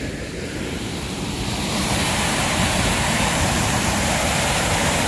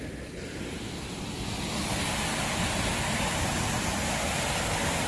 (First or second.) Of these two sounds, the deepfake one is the first